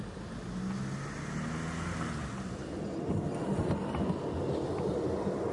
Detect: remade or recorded recorded